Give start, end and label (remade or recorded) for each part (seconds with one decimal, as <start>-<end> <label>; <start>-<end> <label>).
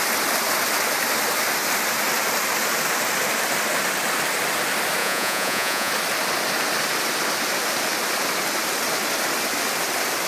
0.0-5.0 recorded; 5.0-5.9 remade; 5.9-10.3 recorded